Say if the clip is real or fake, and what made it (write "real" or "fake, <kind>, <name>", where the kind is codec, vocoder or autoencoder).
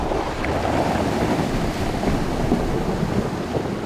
real